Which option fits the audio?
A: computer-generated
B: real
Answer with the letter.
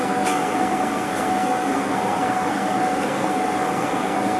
A